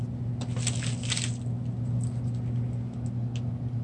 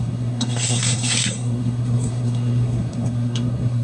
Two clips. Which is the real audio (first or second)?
first